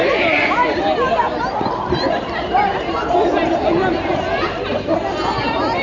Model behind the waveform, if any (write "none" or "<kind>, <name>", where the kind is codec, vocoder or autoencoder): none